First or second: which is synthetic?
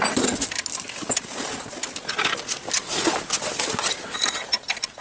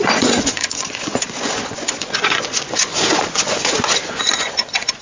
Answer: second